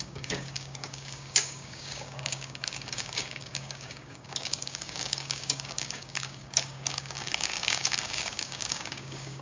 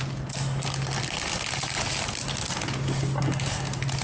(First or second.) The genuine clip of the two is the second